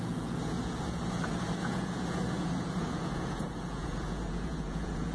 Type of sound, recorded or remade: remade